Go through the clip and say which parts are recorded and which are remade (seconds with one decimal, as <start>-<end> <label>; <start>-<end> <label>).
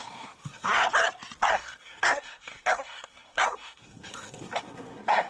0.0-0.9 remade; 0.9-1.5 recorded; 1.5-5.3 remade